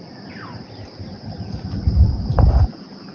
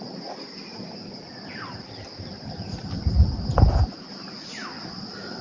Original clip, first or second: first